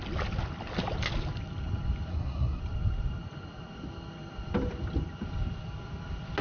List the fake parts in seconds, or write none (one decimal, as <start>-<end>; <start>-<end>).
2.1-2.6

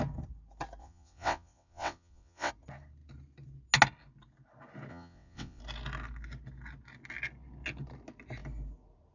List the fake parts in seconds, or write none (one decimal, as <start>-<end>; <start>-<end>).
0.8-2.5; 4.9-5.6

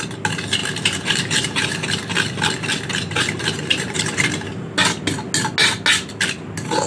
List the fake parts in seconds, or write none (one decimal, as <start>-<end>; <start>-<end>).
0.6-4.7